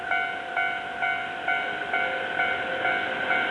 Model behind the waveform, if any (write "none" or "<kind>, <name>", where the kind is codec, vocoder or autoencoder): none